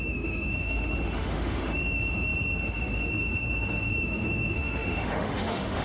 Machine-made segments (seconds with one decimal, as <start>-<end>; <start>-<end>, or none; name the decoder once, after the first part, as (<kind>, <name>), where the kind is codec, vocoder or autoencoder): 0.0-5.8 (autoencoder, DAC-VAE)